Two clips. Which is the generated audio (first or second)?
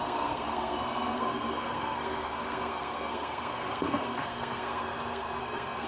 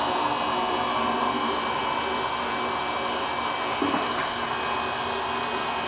first